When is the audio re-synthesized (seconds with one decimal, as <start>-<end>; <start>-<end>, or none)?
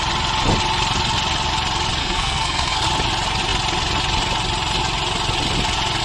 2.0-2.8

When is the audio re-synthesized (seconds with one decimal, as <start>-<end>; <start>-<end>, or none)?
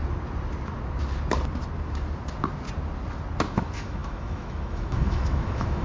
3.5-5.8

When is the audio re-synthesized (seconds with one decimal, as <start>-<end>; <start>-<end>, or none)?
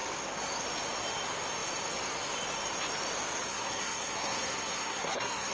3.5-5.5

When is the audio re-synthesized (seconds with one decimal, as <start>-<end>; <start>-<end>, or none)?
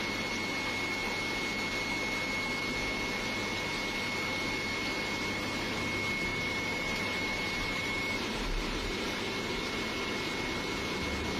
6.3-9.2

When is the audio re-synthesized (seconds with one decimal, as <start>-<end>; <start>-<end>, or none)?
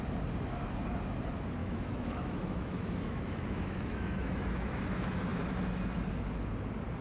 1.6-4.8